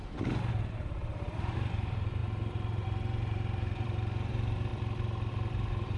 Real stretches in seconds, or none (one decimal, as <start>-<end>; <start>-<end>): 4.7-5.3